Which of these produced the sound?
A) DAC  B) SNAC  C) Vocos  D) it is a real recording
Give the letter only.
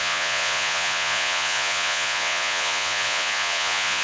C